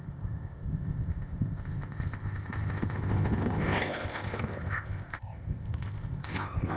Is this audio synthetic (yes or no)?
yes